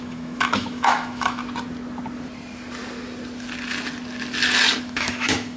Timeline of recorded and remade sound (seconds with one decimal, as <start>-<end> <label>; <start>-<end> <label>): 0.0-1.4 remade; 1.4-4.8 recorded; 4.8-5.6 remade